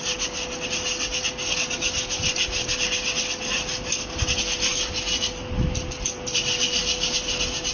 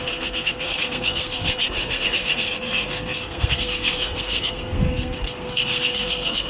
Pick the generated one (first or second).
second